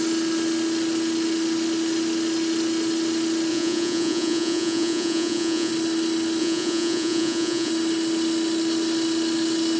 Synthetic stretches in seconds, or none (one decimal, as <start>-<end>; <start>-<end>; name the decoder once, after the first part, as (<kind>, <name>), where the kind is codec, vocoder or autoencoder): 3.5-5.7 (vocoder, Vocos); 6.4-7.7